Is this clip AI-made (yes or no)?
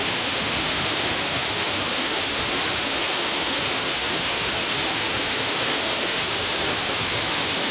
yes